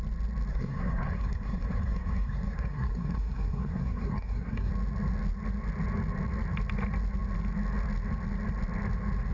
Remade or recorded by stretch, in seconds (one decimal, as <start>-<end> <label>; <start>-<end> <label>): 0.0-0.5 recorded; 0.5-4.7 remade; 4.7-9.3 recorded